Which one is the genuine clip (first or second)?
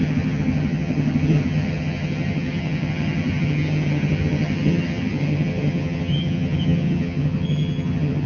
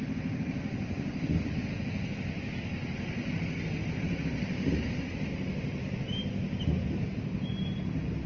second